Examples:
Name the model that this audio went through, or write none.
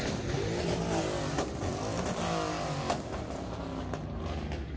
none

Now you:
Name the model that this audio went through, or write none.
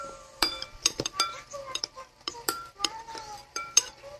vocoder, BigVGAN v2